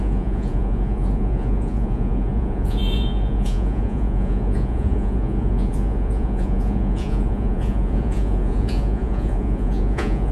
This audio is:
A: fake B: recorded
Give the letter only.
A